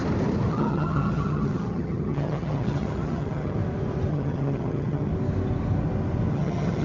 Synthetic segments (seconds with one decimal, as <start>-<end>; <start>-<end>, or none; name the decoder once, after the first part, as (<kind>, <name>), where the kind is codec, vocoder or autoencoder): 0.5-3.6 (vocoder, HiFi-GAN); 4.1-5.1; 6.3-6.8